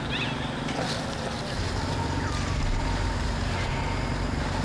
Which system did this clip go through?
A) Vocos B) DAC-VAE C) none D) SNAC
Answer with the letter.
C